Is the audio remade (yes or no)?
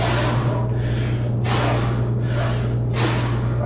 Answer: no